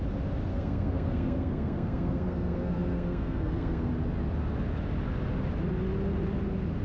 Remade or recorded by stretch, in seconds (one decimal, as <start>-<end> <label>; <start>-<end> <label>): 0.0-0.5 recorded; 0.5-3.9 remade; 3.9-6.8 recorded